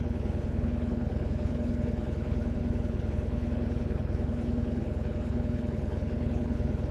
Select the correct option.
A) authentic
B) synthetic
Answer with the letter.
B